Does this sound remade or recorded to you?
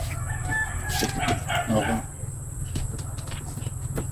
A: recorded